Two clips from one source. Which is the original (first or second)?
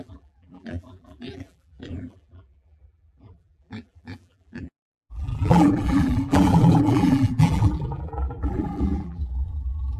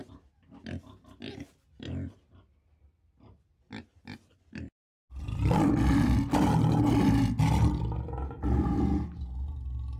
second